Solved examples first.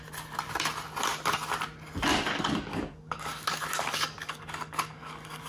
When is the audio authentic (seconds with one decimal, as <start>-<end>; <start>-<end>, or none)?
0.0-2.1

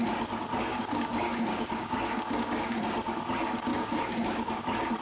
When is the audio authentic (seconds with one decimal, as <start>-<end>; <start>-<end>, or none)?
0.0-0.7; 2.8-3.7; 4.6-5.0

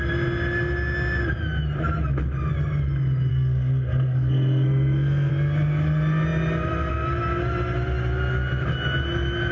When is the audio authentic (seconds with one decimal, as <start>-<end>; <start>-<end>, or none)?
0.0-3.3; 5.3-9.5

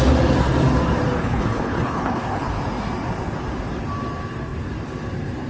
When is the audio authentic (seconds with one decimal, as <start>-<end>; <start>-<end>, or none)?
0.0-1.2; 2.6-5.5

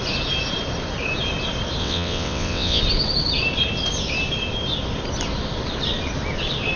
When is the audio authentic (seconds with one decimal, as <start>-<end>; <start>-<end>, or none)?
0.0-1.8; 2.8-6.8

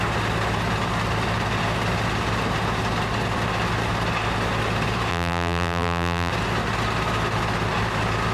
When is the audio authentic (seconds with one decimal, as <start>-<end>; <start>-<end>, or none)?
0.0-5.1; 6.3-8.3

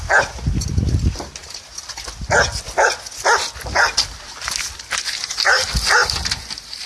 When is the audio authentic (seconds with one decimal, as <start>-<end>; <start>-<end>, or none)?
0.0-6.9

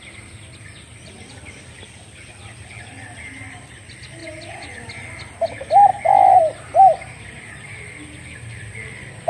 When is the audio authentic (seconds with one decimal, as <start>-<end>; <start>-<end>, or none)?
0.0-9.3